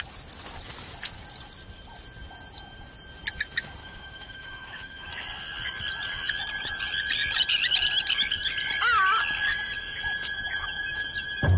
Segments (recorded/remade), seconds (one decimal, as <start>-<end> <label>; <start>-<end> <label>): 0.0-3.8 recorded; 3.8-5.1 remade; 5.1-11.6 recorded